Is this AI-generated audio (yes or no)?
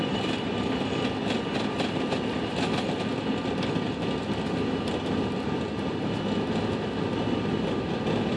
no